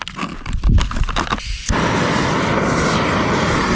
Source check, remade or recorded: recorded